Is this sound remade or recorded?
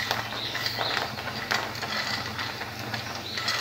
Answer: recorded